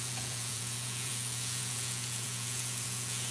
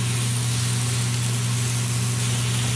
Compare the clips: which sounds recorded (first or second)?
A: second